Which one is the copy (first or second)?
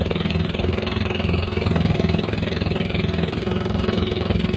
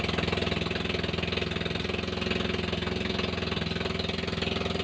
first